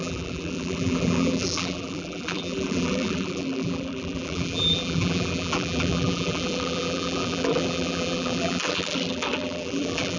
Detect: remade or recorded remade